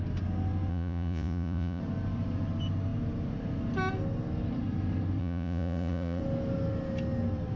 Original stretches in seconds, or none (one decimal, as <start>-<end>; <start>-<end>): 0.0-0.7; 1.8-5.2; 6.2-7.6